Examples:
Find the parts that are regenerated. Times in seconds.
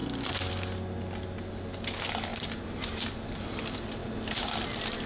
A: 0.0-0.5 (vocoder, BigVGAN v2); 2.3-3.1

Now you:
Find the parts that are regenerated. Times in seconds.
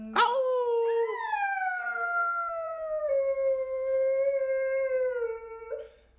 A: 2.2-3.0 (vocoder, BigVGAN v2)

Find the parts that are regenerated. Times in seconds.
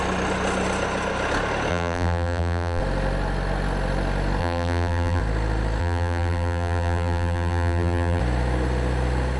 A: 1.7-2.8 (vocoder, BigVGAN v2); 4.4-5.2; 5.8-8.2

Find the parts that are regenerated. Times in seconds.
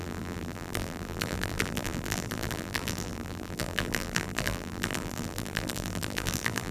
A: 0.0-6.7 (vocoder, BigVGAN v2)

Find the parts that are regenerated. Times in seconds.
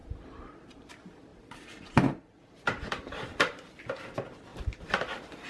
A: 0.0-0.9 (vocoder, BigVGAN v2); 1.3-3.8; 4.5-5.5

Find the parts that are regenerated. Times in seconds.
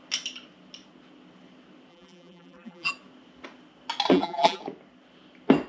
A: 1.9-2.9 (vocoder, BigVGAN v2); 4.1-4.6